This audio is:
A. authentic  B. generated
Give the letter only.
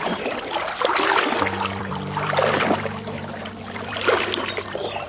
B